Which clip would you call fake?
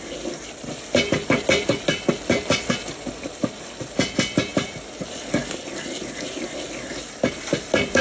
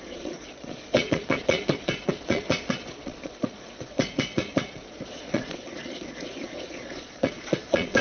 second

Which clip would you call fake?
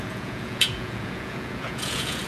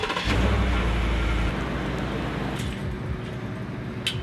first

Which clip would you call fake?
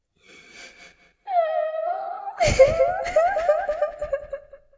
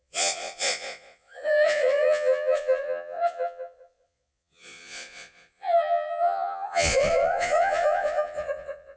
second